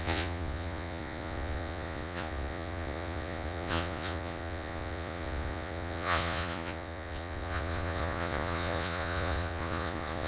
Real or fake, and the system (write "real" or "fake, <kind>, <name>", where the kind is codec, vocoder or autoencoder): fake, vocoder, Vocos